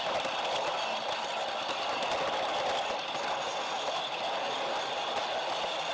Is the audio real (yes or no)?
yes